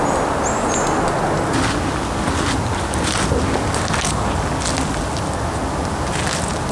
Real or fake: real